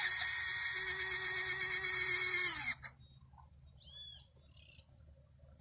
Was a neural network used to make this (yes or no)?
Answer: no